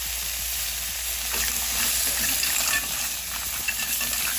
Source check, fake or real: real